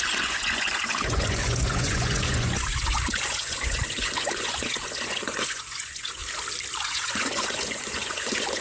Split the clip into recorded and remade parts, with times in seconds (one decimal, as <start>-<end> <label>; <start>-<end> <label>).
0.0-6.2 remade; 6.2-6.8 recorded; 6.8-8.6 remade